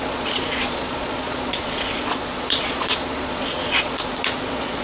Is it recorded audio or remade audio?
remade